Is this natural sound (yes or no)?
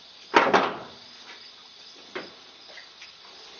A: yes